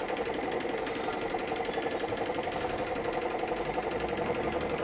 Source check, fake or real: real